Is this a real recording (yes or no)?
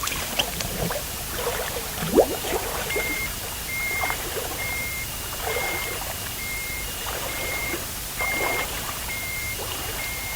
no